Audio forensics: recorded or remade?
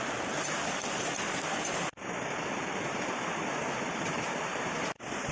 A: remade